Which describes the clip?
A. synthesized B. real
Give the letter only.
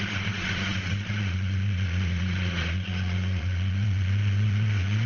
A